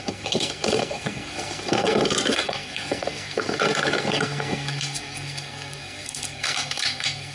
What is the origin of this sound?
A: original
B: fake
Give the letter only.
B